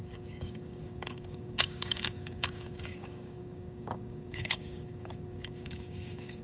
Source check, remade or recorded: remade